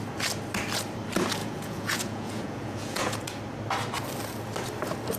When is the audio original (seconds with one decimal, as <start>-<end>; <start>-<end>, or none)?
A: 0.0-1.4; 3.2-5.2